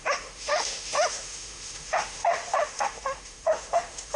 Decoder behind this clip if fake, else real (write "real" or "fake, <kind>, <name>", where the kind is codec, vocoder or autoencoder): fake, autoencoder, DAC-VAE